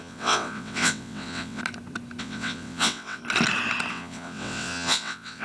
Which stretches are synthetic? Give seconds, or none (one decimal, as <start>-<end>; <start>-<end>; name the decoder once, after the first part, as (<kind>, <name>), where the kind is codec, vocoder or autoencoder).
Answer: 0.0-1.6 (vocoder, WaveNeXt); 2.2-3.2; 3.9-5.4